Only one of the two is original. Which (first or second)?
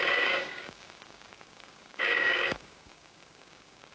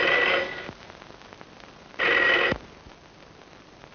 second